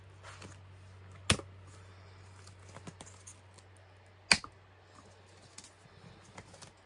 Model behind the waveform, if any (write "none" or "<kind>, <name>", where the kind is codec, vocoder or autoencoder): none